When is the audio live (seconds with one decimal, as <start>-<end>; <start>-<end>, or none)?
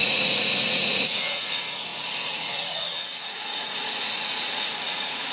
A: none